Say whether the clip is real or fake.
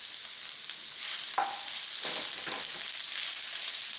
real